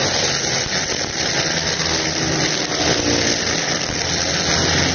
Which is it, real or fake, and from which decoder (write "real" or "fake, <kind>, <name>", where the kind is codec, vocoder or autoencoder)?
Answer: real